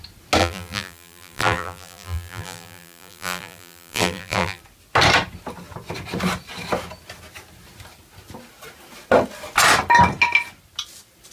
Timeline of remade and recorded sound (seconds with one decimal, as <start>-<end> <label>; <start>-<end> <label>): 0.0-0.4 recorded; 0.4-4.6 remade; 4.6-11.3 recorded